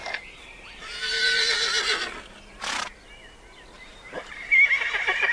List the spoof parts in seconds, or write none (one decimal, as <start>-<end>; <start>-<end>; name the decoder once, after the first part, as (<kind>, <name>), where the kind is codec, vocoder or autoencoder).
3.9-5.3 (vocoder, BigVGAN v2)